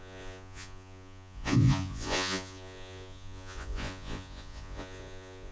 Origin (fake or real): fake